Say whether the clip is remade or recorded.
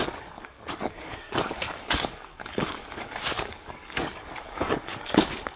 remade